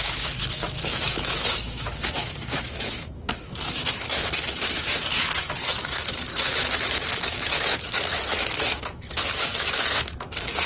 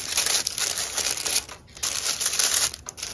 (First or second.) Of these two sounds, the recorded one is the second